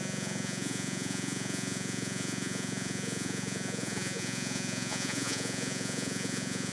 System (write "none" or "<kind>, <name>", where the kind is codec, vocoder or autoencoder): vocoder, Vocos